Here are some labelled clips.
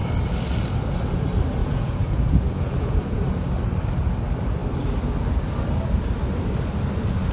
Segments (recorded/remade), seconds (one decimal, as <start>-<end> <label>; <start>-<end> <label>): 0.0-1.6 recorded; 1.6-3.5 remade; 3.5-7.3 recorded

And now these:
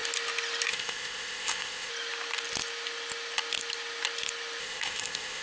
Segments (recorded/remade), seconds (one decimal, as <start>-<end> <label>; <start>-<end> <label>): 0.0-0.7 recorded; 0.7-1.9 remade; 1.9-4.6 recorded; 4.6-5.4 remade

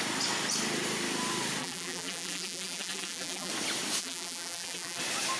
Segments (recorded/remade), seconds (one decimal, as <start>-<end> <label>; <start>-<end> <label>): 0.0-1.6 recorded; 1.6-3.5 remade; 3.5-4.0 recorded; 4.0-5.0 remade; 5.0-5.4 recorded